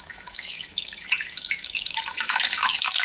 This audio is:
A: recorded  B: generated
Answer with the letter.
B